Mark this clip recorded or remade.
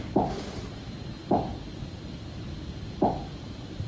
recorded